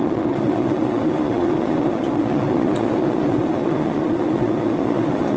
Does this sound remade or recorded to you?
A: remade